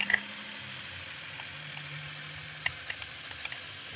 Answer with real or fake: real